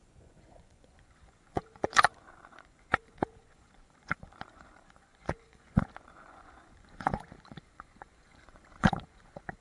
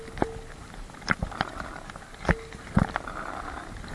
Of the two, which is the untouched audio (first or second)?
second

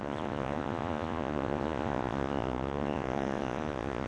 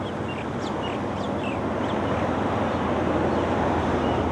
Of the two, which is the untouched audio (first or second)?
second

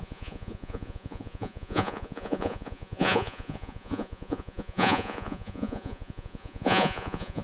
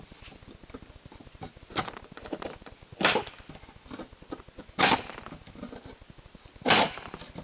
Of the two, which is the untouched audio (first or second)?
second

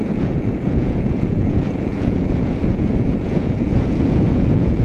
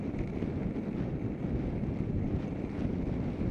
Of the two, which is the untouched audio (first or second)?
second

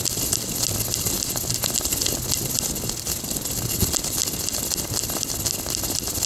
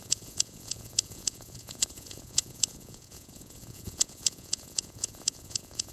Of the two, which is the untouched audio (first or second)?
first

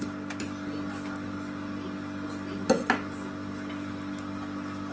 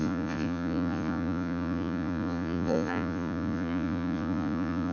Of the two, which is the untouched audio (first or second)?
first